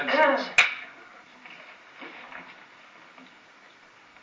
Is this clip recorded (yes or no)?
yes